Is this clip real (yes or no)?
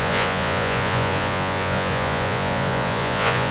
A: no